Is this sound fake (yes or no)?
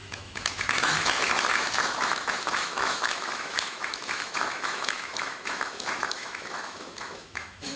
yes